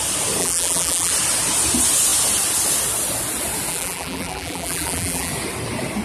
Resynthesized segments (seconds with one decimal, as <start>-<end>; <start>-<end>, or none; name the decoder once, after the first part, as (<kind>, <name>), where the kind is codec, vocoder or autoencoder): 0.4-1.1 (vocoder, BigVGAN v2); 3.7-5.3